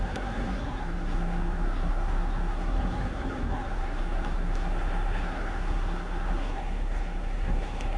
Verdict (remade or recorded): remade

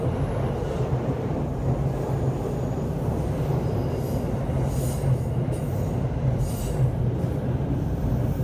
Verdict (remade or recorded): recorded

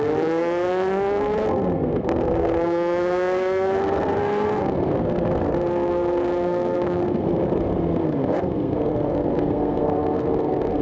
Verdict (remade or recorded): remade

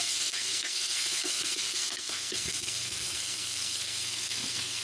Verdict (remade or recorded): remade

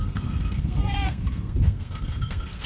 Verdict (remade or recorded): remade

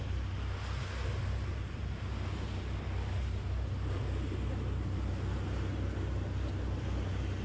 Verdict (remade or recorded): recorded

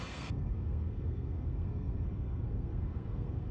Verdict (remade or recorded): remade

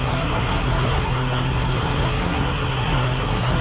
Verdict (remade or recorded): remade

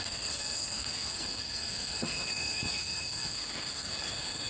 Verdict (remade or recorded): remade